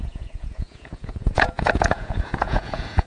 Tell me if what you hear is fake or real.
fake